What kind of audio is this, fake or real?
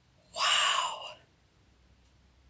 real